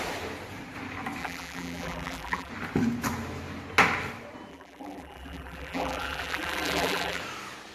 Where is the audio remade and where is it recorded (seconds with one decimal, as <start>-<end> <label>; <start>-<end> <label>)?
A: 0.0-1.2 recorded; 1.2-2.5 remade; 2.5-4.5 recorded; 4.5-7.2 remade; 7.2-7.7 recorded